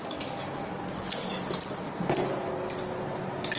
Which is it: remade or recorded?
recorded